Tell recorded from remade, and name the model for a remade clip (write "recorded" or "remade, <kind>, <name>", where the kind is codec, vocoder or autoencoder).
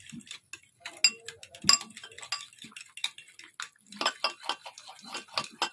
recorded